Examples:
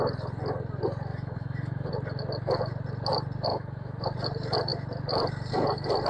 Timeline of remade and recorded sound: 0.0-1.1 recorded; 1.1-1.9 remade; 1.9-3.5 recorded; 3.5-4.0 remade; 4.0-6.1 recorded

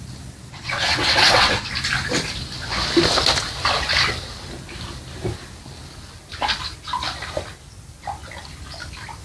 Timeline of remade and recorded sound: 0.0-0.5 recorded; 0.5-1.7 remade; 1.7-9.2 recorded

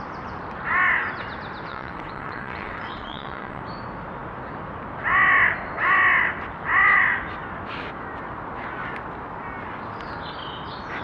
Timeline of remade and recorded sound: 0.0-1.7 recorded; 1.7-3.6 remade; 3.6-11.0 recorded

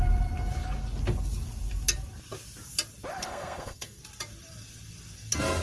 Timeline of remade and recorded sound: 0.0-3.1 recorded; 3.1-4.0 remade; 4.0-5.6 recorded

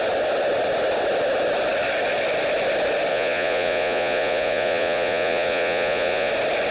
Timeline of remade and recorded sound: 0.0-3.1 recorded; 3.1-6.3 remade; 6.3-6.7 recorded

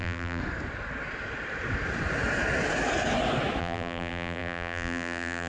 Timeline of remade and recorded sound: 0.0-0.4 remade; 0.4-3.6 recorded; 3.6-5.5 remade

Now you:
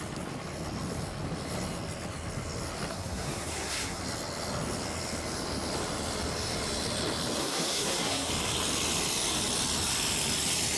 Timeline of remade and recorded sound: 0.0-2.9 recorded; 2.9-4.0 remade; 4.0-7.4 recorded; 7.4-8.3 remade; 8.3-10.8 recorded